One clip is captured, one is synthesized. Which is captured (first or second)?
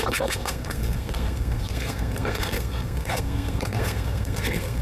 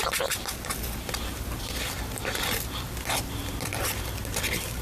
second